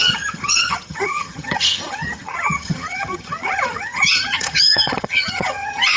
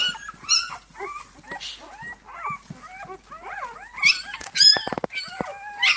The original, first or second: second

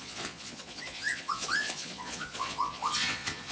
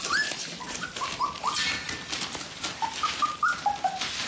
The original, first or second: second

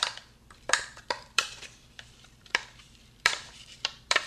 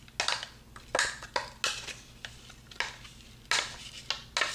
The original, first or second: second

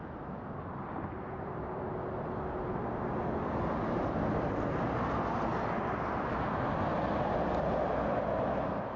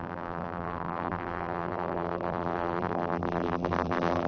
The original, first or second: first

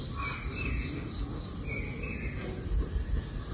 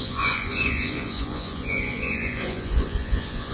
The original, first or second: first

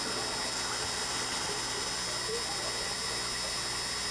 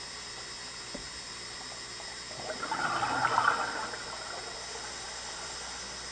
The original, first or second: first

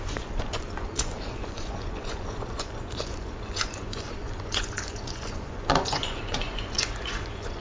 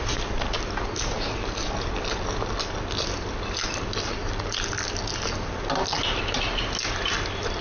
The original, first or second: second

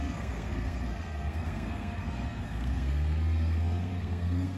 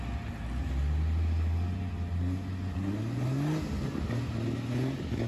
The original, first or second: second